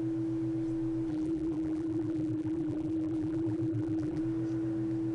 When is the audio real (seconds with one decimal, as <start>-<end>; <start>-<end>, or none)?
0.0-1.1; 4.2-5.1